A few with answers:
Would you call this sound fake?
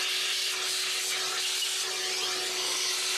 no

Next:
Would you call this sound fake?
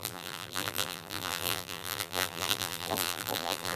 yes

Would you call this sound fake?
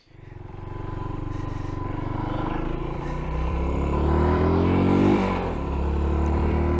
yes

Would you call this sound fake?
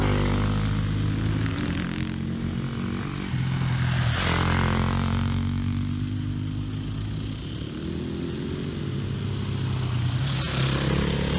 no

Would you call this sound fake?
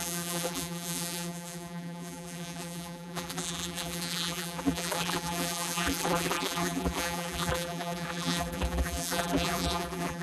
yes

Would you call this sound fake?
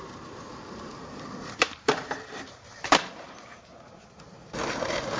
yes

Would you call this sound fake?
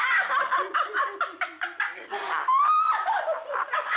no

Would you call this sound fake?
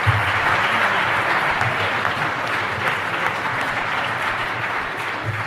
yes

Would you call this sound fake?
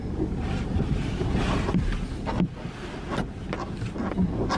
no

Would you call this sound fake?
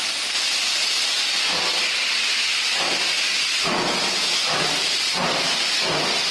no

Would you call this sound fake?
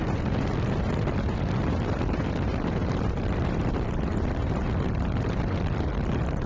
yes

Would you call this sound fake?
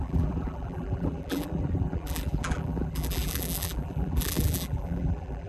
yes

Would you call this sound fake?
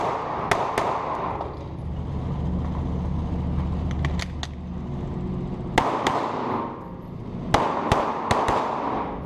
no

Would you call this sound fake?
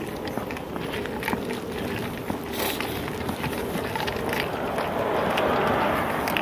no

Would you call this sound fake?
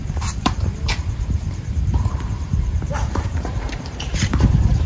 yes